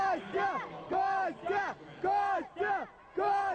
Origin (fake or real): real